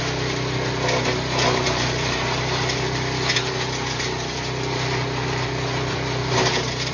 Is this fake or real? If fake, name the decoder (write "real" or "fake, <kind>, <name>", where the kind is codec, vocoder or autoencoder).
fake, vocoder, BigVGAN v2